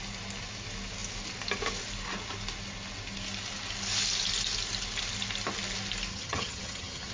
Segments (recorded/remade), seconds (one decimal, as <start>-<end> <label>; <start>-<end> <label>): 0.0-6.1 recorded; 6.1-7.1 remade

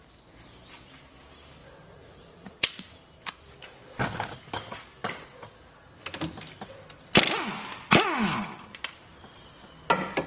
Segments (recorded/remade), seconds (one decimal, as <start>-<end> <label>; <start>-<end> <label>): 0.0-1.6 recorded; 1.6-3.0 remade; 3.0-10.3 recorded

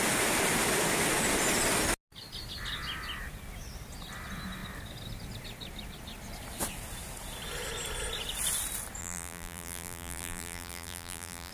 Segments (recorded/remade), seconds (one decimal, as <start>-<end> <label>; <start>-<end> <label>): 0.0-9.0 recorded; 9.0-11.5 remade

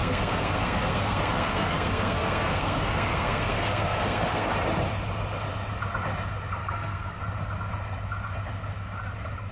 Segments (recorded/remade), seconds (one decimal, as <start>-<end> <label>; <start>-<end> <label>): 0.0-4.5 remade; 4.5-6.6 recorded; 6.6-7.2 remade; 7.2-9.5 recorded